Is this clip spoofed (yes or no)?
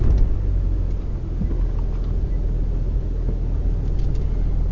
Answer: no